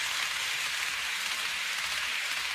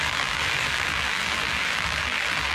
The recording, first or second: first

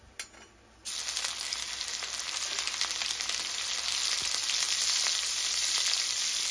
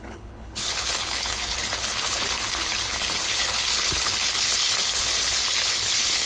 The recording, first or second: first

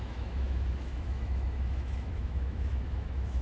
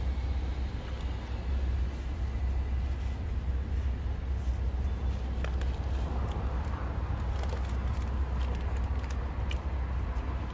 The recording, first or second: second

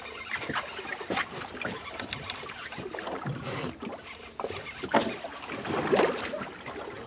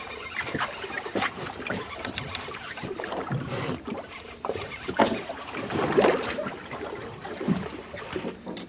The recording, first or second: first